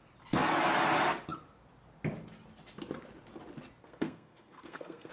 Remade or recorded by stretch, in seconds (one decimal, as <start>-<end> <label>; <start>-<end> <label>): 0.0-3.8 recorded; 3.8-5.1 remade